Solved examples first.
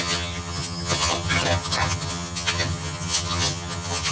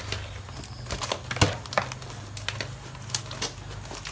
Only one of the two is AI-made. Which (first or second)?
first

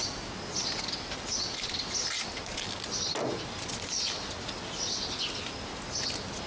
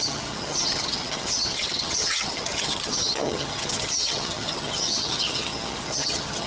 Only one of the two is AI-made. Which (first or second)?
second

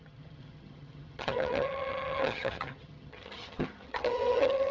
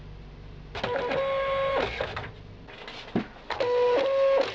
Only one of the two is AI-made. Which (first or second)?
first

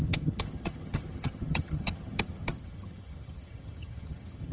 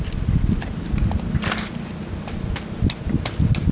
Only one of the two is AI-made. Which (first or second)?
first